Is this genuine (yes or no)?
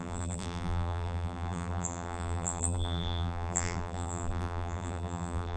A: no